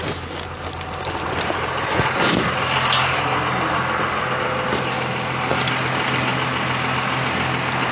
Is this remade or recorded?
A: recorded